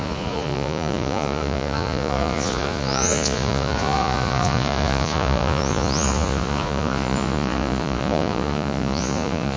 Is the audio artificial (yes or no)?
yes